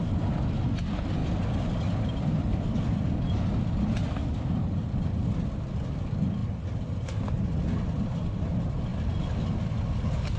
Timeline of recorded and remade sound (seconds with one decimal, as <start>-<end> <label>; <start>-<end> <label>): 0.0-10.4 recorded